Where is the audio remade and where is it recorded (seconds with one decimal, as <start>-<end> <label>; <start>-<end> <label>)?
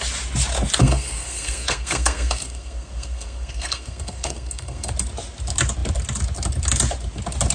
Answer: 0.0-0.8 recorded; 0.8-4.9 remade; 4.9-7.5 recorded